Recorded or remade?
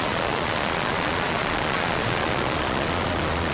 remade